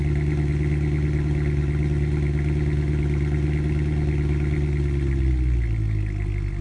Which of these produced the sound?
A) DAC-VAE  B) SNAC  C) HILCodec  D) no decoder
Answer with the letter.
D